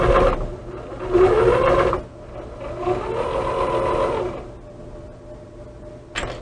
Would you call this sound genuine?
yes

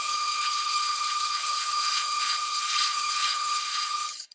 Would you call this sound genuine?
no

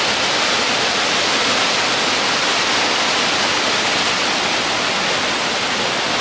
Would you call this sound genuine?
yes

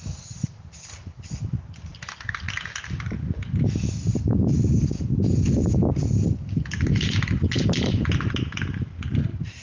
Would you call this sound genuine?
yes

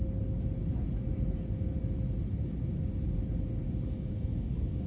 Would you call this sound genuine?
yes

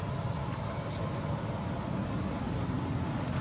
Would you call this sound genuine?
yes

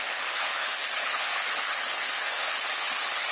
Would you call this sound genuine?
no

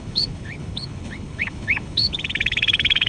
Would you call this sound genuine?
no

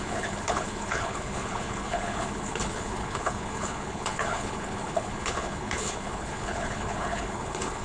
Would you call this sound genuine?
no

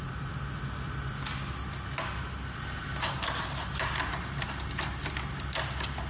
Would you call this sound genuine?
yes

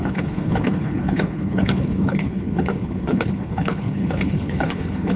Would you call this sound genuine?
no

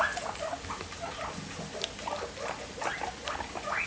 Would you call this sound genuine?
yes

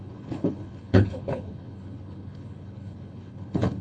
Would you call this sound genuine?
no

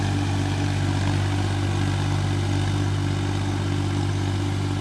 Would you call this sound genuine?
yes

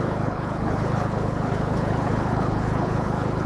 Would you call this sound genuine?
no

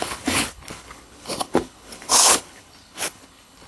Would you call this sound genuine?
no